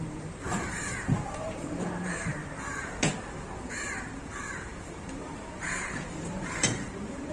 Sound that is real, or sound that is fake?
fake